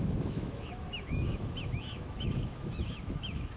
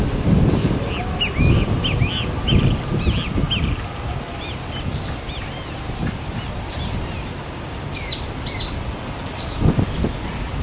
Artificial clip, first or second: first